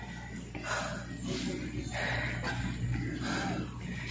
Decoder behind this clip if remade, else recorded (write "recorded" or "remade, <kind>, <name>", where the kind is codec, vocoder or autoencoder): recorded